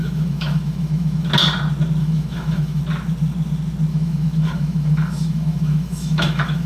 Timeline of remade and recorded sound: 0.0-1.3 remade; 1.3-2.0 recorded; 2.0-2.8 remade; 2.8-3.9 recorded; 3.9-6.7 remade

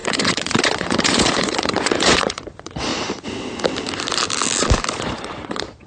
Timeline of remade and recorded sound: 0.0-2.9 remade; 2.9-4.9 recorded; 4.9-5.9 remade

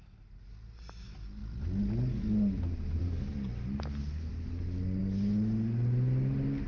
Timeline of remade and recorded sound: 0.0-6.7 recorded

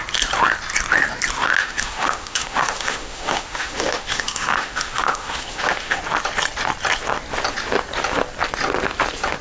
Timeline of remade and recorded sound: 0.0-1.6 recorded; 1.6-6.0 remade; 6.0-9.4 recorded